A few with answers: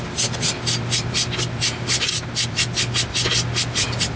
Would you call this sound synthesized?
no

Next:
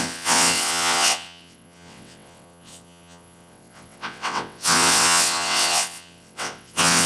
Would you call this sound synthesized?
yes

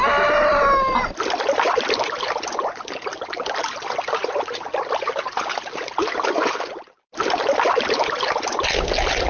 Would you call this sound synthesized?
no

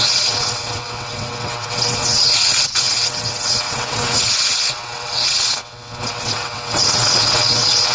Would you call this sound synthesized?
yes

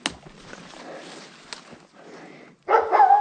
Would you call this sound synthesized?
no